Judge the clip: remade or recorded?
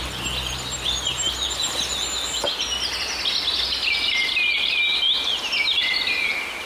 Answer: recorded